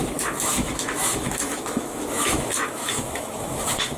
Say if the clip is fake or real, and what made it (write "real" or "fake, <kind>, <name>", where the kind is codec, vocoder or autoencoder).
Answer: fake, autoencoder, DAC-VAE